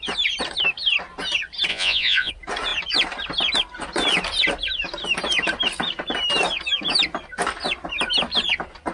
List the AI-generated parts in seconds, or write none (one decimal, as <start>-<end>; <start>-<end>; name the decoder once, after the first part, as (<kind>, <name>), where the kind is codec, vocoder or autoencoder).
1.7-2.3 (vocoder, Vocos)